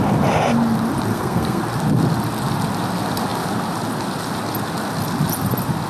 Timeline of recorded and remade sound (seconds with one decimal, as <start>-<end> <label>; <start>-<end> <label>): 0.0-1.1 recorded; 1.1-1.6 remade; 1.6-5.9 recorded